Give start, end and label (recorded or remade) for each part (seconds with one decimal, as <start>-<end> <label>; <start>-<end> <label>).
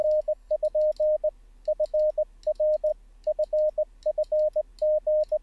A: 0.0-0.5 remade; 0.5-5.4 recorded